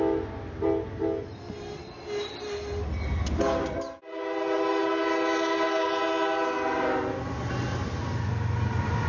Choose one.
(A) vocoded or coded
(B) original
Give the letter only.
B